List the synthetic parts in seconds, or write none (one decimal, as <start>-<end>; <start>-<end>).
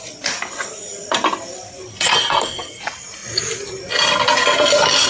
1.9-2.8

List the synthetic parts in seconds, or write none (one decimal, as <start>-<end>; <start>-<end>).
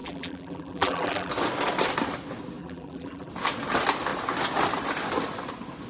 0.0-1.3; 2.6-3.3